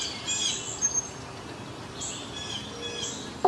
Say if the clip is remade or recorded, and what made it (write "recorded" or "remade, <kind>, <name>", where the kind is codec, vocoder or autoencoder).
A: recorded